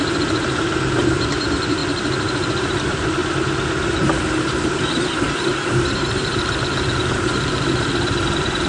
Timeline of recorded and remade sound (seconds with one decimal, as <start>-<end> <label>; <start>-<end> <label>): 0.0-3.2 remade; 3.2-3.9 recorded; 3.9-8.7 remade